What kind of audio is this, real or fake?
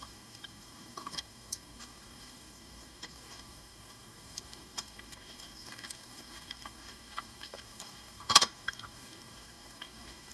fake